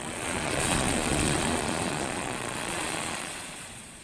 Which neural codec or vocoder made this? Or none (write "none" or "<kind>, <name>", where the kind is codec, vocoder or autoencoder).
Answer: vocoder, Vocos